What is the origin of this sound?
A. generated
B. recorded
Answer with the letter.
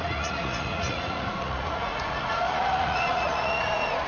A